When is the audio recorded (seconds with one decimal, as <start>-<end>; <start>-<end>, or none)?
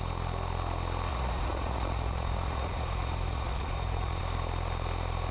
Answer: 0.0-1.1; 4.2-5.3